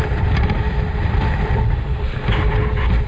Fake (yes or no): yes